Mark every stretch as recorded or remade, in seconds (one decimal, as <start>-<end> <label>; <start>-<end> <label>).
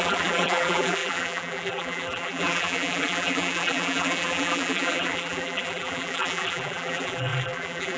0.0-8.0 remade